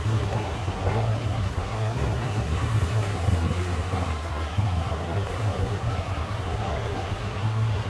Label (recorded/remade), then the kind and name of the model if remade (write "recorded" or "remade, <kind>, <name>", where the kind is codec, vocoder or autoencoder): remade, codec, SNAC